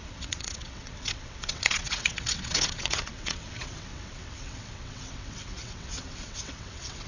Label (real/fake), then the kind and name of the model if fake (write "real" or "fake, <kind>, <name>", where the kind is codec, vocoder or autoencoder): fake, vocoder, WaveNeXt